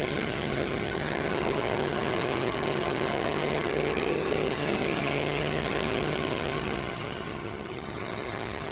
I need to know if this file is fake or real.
fake